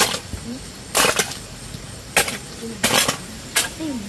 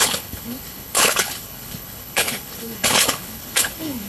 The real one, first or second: first